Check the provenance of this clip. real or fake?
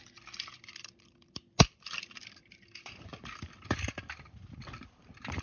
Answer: real